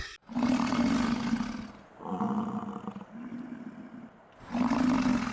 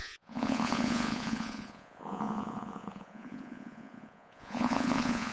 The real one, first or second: first